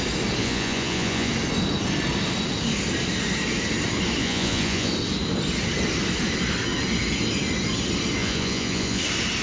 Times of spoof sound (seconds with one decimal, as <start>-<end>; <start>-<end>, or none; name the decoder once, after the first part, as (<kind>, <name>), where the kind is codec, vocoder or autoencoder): 0.4-1.3 (vocoder, Vocos); 4.2-4.9; 8.2-9.0